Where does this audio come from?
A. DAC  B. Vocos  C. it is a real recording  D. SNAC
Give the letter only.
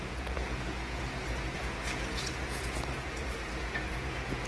B